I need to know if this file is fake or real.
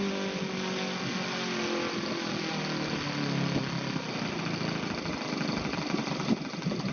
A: real